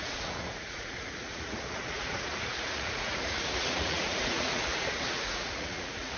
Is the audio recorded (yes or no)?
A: no